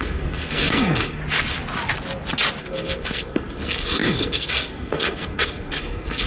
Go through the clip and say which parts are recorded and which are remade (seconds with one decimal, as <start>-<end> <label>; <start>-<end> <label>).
0.0-1.2 remade; 1.2-2.6 recorded; 2.6-6.3 remade